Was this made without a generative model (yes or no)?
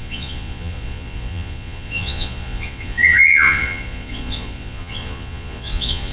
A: no